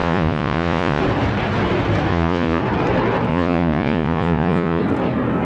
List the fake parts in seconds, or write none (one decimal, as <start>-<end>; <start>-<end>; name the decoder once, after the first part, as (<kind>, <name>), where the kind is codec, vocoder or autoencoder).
0.0-1.0 (vocoder, Vocos); 2.1-2.6; 3.3-4.8